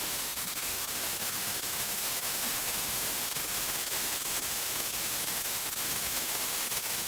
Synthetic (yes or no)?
yes